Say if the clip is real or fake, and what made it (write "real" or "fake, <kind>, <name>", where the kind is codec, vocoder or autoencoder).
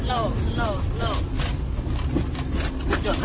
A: real